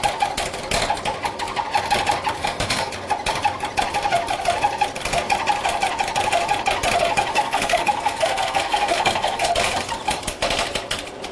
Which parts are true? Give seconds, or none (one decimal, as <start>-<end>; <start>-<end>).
0.0-2.4; 2.9-7.3; 9.5-11.3

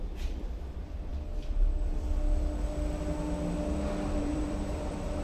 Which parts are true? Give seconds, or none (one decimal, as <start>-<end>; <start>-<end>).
1.1-4.2

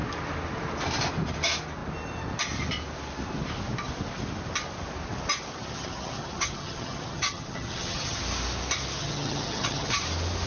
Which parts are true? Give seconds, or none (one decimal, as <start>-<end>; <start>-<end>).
0.0-5.6; 8.2-9.0; 10.0-10.5